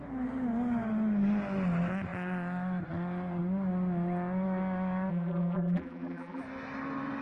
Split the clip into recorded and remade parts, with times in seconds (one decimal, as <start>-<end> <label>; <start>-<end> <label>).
0.0-5.1 recorded; 5.1-6.4 remade; 6.4-7.2 recorded